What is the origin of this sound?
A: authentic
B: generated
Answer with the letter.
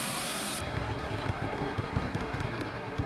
B